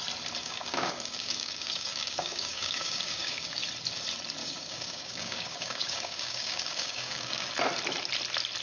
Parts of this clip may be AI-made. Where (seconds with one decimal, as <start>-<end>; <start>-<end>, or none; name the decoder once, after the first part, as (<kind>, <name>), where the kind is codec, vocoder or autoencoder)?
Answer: 0.4-3.6 (codec, DAC); 4.4-7.5